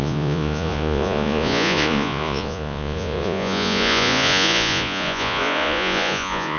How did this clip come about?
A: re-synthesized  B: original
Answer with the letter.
A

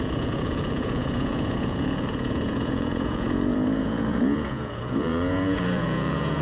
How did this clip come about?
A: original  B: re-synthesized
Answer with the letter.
B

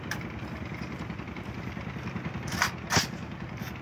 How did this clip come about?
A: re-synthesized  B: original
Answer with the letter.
B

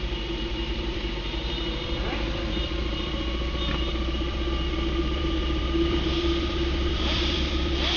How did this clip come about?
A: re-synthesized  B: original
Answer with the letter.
A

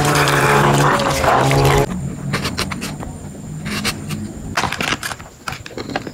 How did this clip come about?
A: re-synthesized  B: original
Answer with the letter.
B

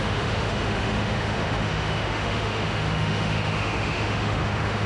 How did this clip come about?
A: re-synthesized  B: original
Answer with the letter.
A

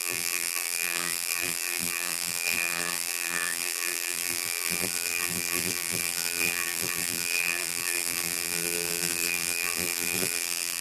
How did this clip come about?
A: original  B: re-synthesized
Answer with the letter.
B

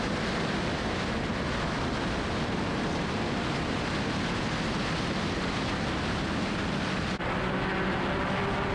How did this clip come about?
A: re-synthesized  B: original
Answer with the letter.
B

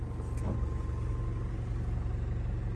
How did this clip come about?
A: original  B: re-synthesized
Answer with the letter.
A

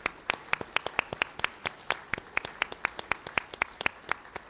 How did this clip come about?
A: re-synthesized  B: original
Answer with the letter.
B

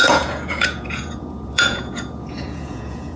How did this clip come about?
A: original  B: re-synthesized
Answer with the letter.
B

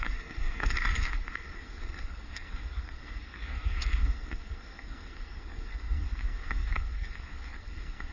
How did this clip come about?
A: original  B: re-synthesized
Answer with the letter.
B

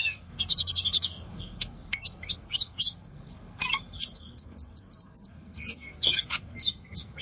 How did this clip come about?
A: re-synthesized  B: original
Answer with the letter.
A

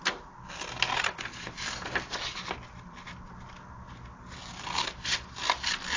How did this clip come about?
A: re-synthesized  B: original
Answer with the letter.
B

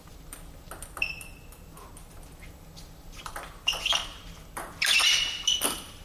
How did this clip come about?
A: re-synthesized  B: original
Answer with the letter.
B